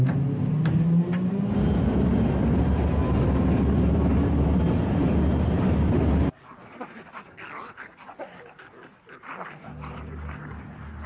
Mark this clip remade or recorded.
recorded